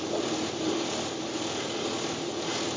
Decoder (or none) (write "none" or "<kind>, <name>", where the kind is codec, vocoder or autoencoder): none